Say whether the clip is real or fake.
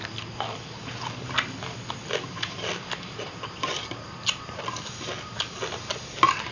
real